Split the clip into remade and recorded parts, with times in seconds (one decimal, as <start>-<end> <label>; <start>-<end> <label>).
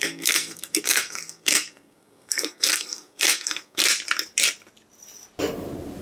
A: 0.0-3.8 remade; 3.8-6.0 recorded